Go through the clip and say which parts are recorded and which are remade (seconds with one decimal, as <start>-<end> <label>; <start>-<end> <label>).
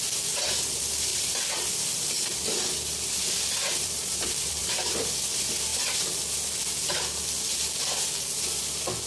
0.0-1.1 recorded; 1.1-5.3 remade; 5.3-9.1 recorded